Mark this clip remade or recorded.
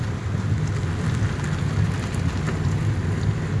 recorded